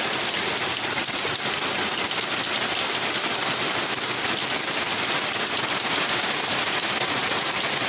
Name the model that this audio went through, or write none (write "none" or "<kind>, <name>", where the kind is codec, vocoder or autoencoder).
vocoder, BigVGAN v2